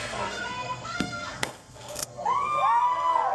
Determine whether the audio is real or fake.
fake